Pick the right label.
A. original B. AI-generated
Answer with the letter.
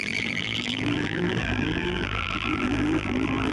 B